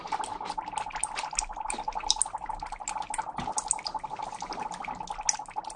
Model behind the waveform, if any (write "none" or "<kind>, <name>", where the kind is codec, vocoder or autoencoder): none